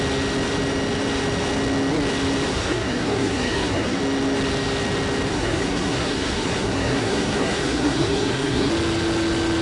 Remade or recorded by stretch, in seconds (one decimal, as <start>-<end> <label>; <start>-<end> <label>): 0.0-2.5 recorded; 2.5-4.0 remade; 4.0-5.3 recorded; 5.3-8.7 remade; 8.7-9.6 recorded